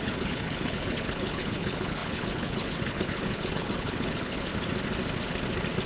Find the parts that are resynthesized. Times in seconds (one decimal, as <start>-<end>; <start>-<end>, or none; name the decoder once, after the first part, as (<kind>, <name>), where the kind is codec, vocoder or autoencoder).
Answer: 0.0-4.5 (codec, HILCodec)